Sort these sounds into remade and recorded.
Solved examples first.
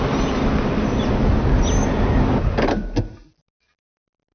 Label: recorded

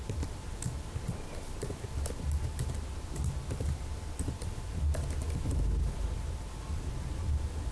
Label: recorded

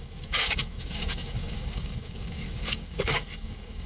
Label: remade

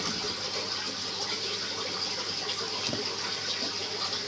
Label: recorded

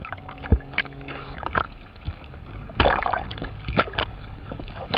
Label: remade